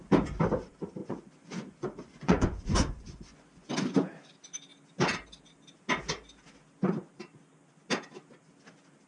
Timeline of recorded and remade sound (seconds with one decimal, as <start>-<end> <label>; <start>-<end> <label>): 0.0-1.0 recorded; 1.0-3.7 remade; 3.7-9.1 recorded